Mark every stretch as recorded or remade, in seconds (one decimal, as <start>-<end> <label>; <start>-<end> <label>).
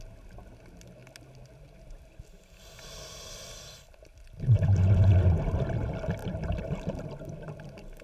0.0-8.0 recorded